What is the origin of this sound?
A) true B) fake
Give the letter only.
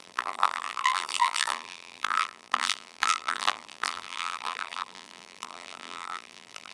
B